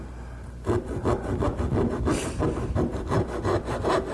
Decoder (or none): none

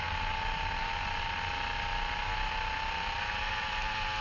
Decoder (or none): none